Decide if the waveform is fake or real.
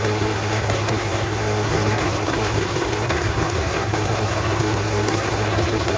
fake